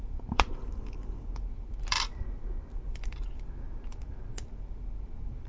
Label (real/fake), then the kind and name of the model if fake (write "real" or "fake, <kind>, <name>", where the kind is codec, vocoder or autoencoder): fake, vocoder, BigVGAN v2